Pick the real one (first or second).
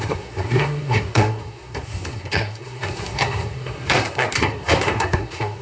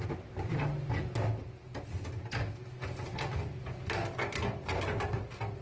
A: second